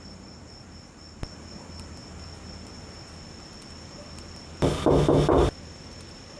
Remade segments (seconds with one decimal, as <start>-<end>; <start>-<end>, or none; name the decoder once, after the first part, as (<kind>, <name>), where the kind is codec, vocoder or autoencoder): 0.0-2.0 (vocoder, BigVGAN v2); 5.3-6.4